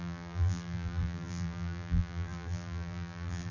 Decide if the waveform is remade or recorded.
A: remade